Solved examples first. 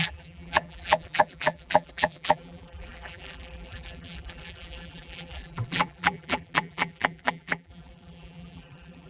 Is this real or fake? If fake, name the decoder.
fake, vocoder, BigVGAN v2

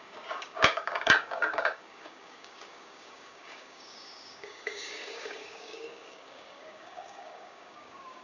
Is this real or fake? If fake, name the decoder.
fake, codec, DAC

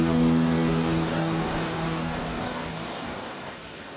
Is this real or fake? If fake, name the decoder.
fake, codec, DAC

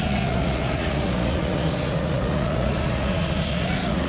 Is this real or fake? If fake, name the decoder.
fake, vocoder, Vocos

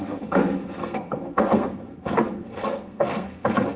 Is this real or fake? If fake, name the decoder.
fake, codec, SNAC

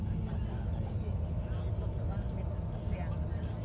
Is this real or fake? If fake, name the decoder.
real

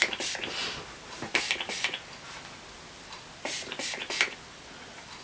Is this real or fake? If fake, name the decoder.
real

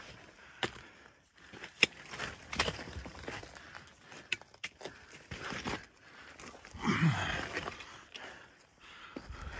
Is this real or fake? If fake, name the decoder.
real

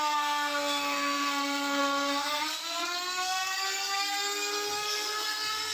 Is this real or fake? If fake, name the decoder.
fake, codec, SNAC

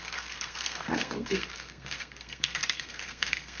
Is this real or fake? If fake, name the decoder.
fake, codec, SNAC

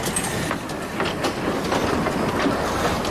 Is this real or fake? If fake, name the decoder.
real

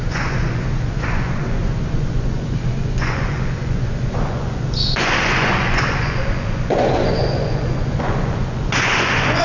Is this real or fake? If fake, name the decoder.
fake, vocoder, Vocos